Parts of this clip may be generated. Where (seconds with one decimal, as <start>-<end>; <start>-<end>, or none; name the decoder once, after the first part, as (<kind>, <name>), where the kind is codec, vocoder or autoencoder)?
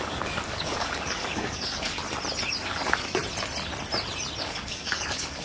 0.0-2.0 (codec, DAC); 2.6-3.2; 4.4-5.4